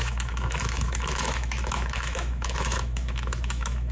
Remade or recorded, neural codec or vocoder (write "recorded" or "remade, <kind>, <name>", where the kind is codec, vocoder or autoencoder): remade, autoencoder, DAC-VAE